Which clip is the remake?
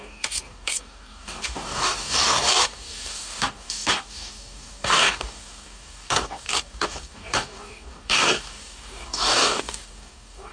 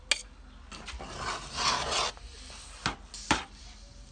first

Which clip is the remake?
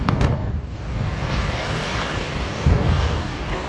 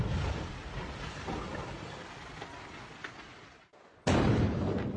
first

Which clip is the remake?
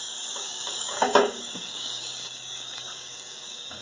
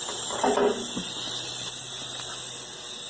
first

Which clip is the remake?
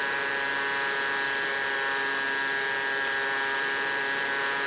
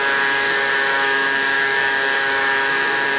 second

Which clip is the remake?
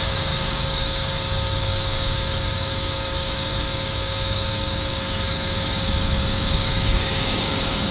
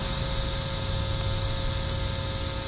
first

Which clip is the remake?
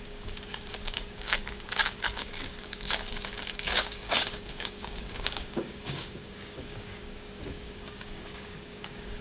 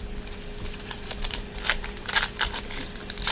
first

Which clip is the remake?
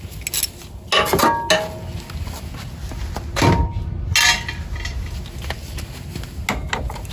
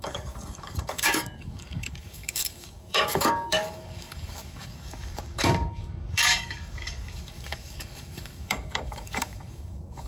second